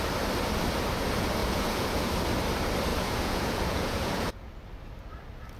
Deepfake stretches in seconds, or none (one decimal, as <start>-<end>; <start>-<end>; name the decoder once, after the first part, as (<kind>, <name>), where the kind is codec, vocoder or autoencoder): 1.4-2.1 (vocoder, Vocos); 2.9-4.5